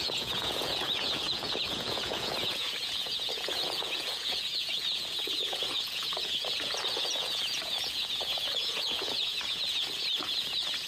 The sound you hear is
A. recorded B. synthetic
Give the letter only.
B